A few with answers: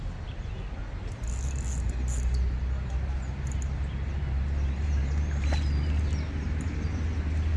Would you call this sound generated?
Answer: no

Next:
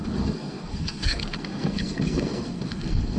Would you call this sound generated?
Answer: yes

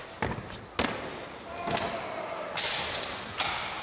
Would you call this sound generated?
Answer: no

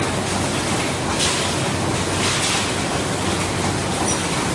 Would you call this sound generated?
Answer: no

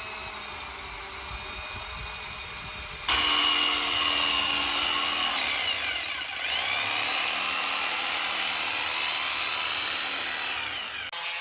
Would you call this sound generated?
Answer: no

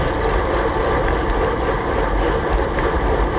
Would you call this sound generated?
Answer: no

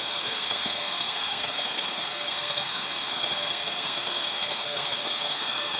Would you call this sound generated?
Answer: yes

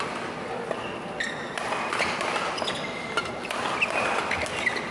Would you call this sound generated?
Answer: no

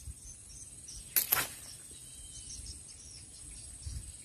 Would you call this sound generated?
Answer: no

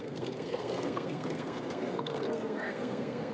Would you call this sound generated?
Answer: yes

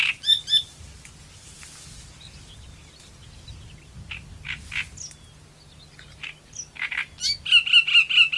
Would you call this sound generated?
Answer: no